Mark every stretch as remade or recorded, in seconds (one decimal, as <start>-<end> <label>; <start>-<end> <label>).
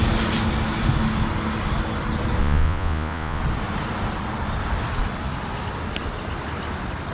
0.0-2.4 recorded; 2.4-3.4 remade; 3.4-7.1 recorded